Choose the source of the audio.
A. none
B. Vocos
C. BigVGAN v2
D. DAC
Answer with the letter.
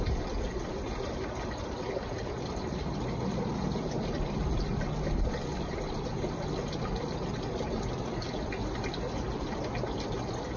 A